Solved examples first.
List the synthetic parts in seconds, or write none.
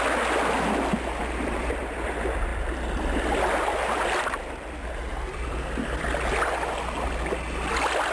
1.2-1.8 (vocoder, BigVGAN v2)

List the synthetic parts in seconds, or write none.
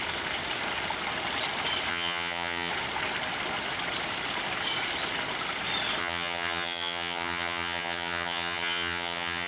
1.9-2.7 (vocoder, HiFi-GAN); 6.0-9.5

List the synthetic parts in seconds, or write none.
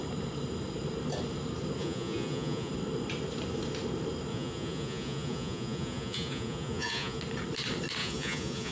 1.8-2.7 (vocoder, Vocos); 4.3-7.2; 8.0-8.7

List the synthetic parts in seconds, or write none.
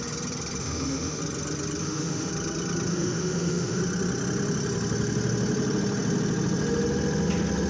0.6-1.2 (autoencoder, DAC-VAE); 1.8-2.3; 2.9-3.8